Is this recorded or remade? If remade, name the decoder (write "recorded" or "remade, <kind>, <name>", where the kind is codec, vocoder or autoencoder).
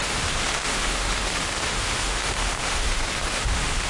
remade, autoencoder, DAC-VAE